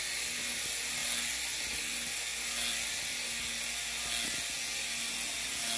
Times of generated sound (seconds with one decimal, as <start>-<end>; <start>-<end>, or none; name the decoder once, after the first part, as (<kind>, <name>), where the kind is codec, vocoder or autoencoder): none